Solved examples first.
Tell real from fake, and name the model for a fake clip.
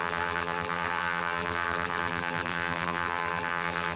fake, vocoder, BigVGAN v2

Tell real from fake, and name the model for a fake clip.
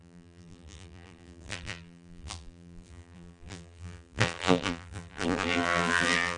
fake, vocoder, BigVGAN v2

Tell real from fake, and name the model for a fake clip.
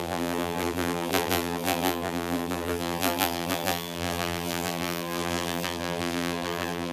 fake, vocoder, BigVGAN v2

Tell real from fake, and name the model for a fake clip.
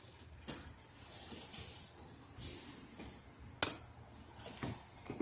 real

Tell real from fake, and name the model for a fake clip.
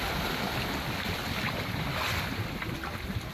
real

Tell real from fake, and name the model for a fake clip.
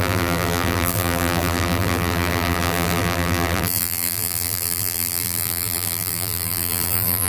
fake, vocoder, BigVGAN v2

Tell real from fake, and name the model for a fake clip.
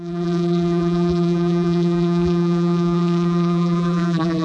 fake, vocoder, BigVGAN v2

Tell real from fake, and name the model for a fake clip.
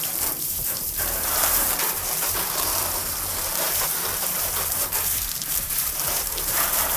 fake, vocoder, BigVGAN v2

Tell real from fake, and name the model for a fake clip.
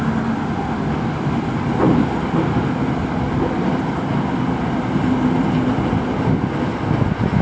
real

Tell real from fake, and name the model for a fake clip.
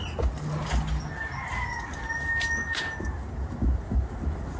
real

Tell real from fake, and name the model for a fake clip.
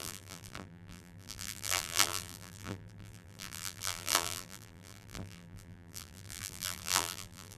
fake, vocoder, BigVGAN v2